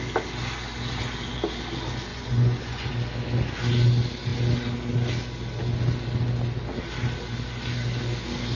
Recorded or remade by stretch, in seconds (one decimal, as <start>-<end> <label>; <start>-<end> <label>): 0.0-2.1 recorded; 2.1-2.9 remade; 2.9-8.6 recorded